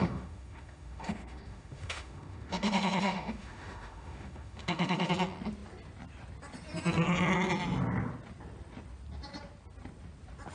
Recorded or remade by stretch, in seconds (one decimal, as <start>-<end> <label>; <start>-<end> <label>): 0.0-5.1 remade; 5.1-10.5 recorded